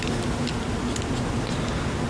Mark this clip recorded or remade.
recorded